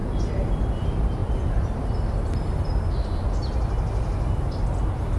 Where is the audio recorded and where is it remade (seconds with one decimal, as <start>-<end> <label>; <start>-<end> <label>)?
0.0-0.6 remade; 0.6-1.2 recorded; 1.2-1.8 remade; 1.8-5.2 recorded